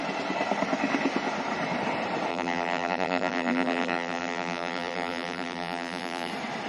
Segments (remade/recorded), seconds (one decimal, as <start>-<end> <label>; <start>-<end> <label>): 0.0-2.3 recorded; 2.3-6.3 remade; 6.3-6.7 recorded